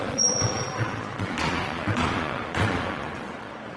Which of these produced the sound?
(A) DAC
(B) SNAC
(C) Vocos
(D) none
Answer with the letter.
C